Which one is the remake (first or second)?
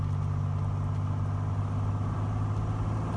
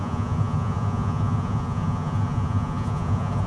second